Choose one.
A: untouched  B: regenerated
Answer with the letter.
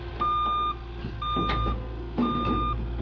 A